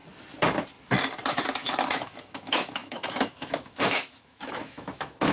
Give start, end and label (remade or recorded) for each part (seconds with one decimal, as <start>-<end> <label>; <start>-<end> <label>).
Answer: 0.0-1.3 recorded; 1.3-5.3 remade